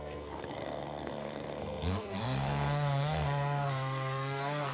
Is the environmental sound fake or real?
fake